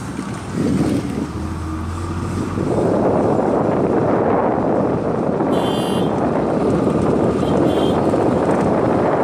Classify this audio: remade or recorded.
recorded